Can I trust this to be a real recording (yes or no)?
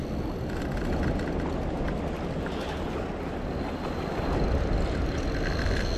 yes